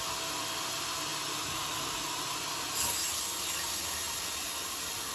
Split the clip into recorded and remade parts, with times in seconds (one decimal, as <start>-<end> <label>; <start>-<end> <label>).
0.0-5.1 recorded